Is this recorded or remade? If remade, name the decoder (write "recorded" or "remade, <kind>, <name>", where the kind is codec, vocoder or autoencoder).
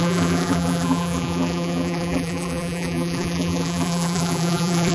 remade, vocoder, BigVGAN v2